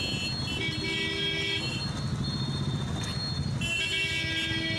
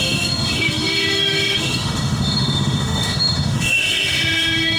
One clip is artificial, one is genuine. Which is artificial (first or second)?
second